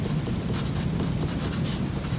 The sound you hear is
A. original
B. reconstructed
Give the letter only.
A